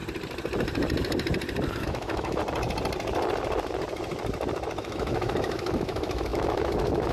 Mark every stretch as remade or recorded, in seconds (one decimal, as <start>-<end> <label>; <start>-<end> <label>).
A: 0.0-1.7 recorded; 1.7-2.4 remade; 2.4-4.8 recorded; 4.8-7.1 remade